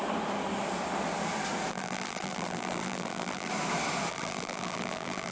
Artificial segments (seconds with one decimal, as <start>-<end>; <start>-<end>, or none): 1.7-3.5; 4.1-5.3